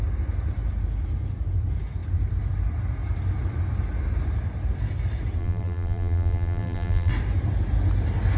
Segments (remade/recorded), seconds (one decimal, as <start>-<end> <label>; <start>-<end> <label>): 0.0-5.4 recorded; 5.4-7.1 remade; 7.1-8.4 recorded